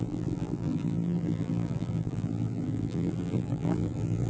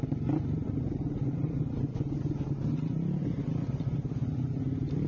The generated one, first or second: first